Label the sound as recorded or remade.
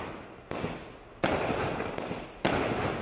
recorded